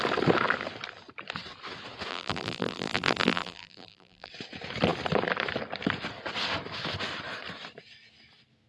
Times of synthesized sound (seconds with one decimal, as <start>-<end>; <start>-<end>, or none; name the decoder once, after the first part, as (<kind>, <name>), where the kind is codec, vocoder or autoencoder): 2.1-4.3 (vocoder, BigVGAN v2)